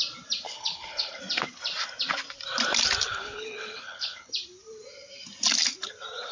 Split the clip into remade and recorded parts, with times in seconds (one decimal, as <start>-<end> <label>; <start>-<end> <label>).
0.0-0.5 recorded; 0.5-1.2 remade; 1.2-3.1 recorded; 3.1-4.3 remade; 4.3-6.3 recorded